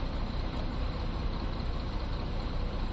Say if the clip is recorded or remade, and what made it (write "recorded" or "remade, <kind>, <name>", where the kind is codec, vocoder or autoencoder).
remade, vocoder, BigVGAN v2